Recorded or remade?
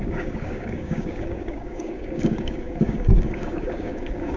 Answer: remade